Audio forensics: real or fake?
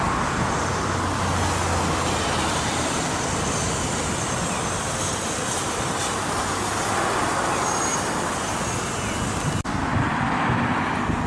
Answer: real